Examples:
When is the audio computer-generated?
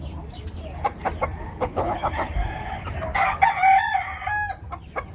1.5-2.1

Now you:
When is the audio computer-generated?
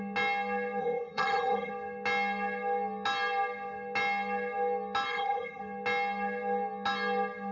0.8-1.7; 5.1-5.6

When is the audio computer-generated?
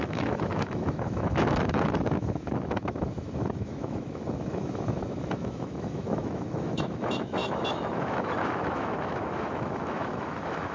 0.0-10.7